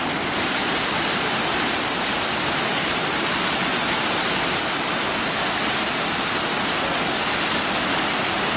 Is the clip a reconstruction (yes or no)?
no